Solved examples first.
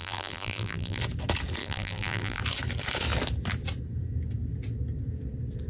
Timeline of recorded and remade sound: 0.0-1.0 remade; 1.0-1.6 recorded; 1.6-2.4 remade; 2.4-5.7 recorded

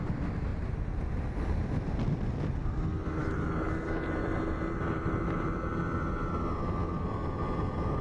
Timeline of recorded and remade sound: 0.0-0.5 recorded; 0.5-1.0 remade; 1.0-3.2 recorded; 3.2-5.8 remade; 5.8-8.0 recorded